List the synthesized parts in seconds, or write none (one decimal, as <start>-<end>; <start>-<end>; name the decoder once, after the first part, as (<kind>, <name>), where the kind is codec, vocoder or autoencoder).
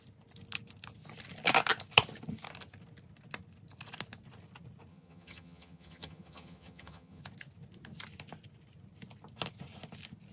4.9-7.2 (vocoder, HiFi-GAN)